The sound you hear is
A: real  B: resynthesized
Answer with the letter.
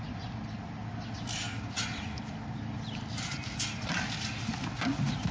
A